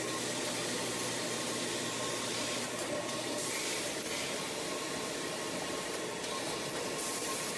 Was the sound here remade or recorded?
recorded